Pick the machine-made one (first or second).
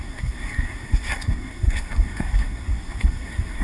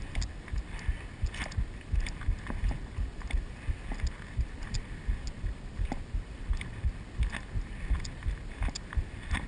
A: first